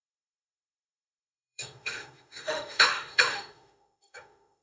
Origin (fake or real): fake